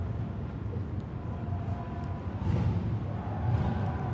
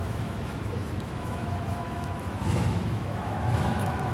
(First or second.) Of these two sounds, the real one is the first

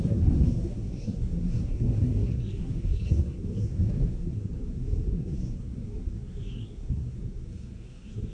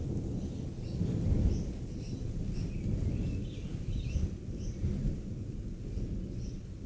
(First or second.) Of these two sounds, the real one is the second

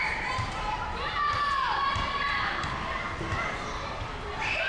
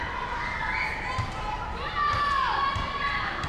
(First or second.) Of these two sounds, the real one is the second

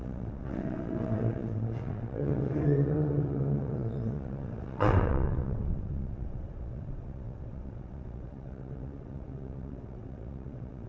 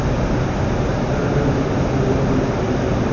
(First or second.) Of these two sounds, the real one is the second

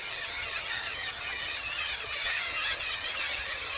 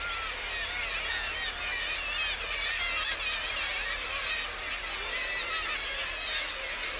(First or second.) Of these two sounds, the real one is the second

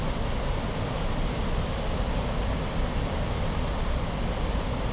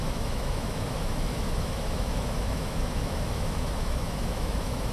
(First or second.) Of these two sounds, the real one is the first